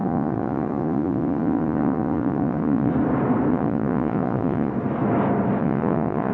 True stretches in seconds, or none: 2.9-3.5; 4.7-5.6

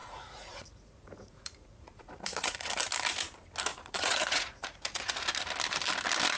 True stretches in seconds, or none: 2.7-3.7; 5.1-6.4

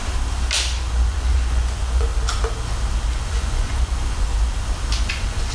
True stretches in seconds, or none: 0.0-0.9; 2.1-3.2; 4.3-5.0